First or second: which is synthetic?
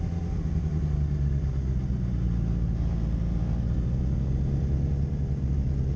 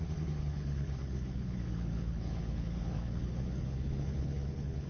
second